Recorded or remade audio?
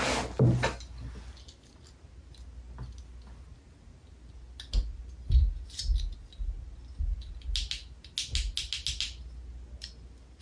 recorded